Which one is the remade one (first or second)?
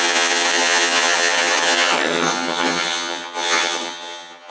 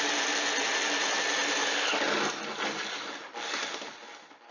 first